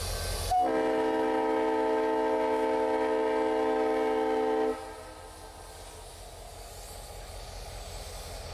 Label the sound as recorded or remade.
recorded